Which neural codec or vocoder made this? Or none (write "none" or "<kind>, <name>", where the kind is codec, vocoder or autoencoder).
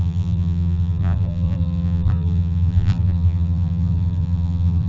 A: vocoder, BigVGAN v2